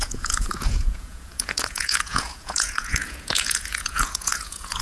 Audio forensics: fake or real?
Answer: fake